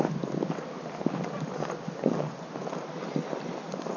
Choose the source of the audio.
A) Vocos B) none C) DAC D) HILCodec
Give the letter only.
B